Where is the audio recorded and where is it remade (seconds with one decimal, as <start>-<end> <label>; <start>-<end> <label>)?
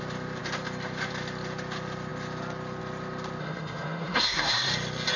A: 0.0-3.4 recorded; 3.4-4.7 remade; 4.7-5.2 recorded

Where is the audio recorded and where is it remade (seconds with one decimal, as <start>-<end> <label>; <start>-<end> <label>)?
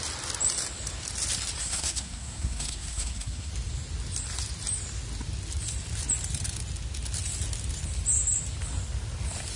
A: 0.0-1.6 recorded; 1.6-3.5 remade; 3.5-9.6 recorded